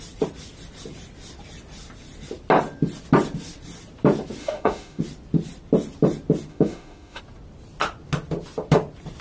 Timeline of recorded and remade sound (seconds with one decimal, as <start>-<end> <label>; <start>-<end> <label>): 0.0-4.4 recorded; 4.4-5.0 remade; 5.0-6.5 recorded; 6.5-7.2 remade; 7.2-9.2 recorded